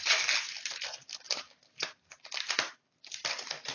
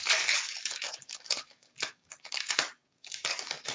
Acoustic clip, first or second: first